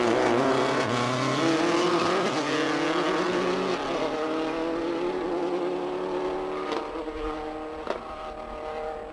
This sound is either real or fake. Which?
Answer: real